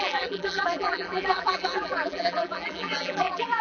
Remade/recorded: remade